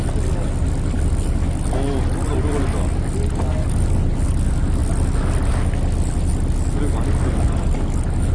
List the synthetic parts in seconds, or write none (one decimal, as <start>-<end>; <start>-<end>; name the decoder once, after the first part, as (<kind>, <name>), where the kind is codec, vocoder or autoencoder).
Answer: none